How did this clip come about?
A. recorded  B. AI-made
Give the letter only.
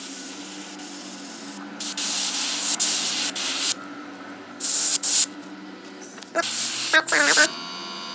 A